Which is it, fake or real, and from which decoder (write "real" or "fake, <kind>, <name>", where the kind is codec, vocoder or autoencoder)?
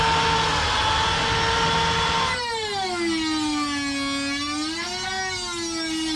real